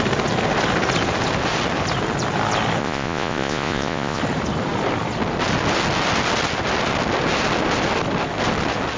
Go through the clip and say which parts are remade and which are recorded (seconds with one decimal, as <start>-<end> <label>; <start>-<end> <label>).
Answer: 0.0-2.8 recorded; 2.8-4.2 remade; 4.2-9.0 recorded